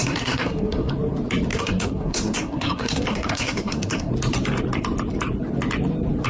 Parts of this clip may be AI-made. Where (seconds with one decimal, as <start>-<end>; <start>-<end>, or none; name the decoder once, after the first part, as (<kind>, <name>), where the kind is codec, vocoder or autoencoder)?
0.0-0.9 (codec, SNAC); 1.5-4.1